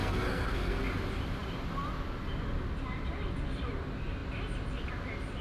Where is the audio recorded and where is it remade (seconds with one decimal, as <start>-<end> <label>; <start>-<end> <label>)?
0.0-0.8 remade; 0.8-5.4 recorded